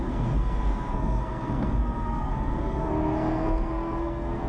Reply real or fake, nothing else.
fake